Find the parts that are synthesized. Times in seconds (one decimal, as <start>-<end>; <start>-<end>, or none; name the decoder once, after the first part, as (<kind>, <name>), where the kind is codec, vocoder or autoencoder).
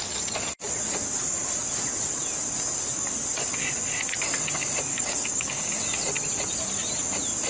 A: 4.9-5.7 (codec, DAC)